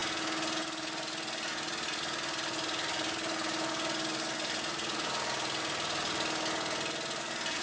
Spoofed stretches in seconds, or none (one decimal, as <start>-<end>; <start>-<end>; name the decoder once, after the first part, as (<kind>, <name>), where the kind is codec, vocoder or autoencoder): none